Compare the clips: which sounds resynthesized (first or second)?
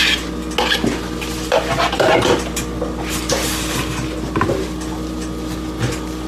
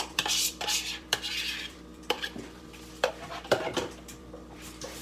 second